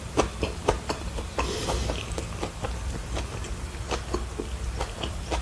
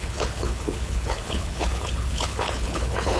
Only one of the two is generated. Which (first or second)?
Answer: second